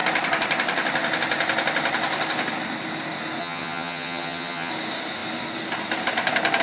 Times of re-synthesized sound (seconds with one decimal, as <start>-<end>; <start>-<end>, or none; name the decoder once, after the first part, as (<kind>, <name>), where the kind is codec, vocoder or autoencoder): 3.4-4.7 (vocoder, HiFi-GAN)